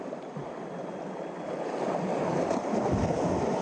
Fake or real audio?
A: real